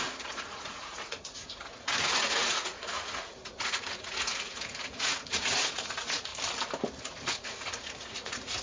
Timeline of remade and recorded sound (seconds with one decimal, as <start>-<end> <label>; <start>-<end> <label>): 0.0-6.3 remade; 6.3-7.0 recorded; 7.0-8.6 remade